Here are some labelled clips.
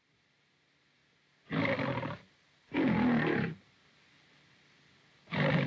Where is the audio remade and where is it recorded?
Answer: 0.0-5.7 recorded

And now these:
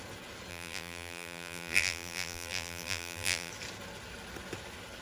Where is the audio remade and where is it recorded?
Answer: 0.0-0.5 recorded; 0.5-3.5 remade; 3.5-5.0 recorded